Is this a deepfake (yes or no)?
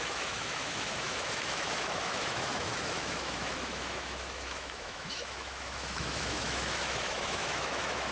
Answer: yes